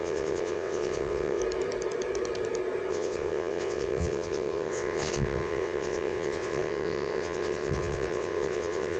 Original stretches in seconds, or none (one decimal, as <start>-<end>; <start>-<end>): 1.4-2.9